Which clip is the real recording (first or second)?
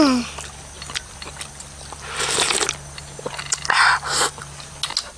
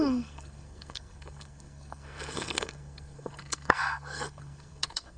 first